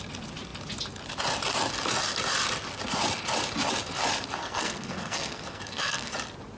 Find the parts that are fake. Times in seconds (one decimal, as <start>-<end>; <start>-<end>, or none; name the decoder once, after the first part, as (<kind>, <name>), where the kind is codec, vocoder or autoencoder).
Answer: 4.4-6.1 (codec, SNAC)